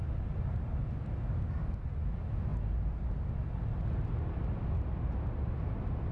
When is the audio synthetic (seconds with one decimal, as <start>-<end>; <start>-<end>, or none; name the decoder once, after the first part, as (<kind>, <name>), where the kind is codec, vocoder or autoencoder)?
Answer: none